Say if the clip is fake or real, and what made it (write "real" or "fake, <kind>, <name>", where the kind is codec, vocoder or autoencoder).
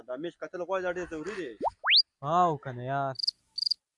real